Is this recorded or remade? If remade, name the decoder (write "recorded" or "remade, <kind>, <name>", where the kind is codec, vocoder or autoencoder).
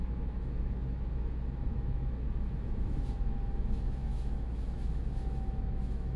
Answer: remade, autoencoder, DAC-VAE